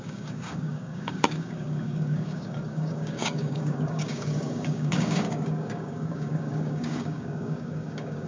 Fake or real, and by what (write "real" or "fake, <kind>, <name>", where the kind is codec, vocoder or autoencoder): fake, codec, DAC